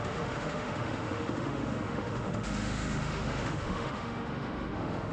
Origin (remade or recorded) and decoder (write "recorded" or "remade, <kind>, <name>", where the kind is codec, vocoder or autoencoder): remade, autoencoder, DAC-VAE